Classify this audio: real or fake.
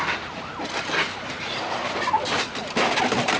real